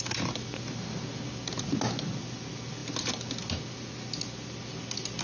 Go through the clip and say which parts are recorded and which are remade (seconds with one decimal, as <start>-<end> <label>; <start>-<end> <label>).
0.0-5.2 recorded